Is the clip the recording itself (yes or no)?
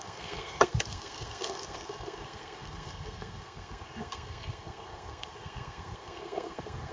no